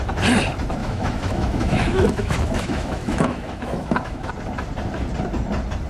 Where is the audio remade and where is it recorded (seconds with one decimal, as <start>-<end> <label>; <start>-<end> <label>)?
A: 0.0-0.8 recorded; 0.8-4.3 remade; 4.3-5.9 recorded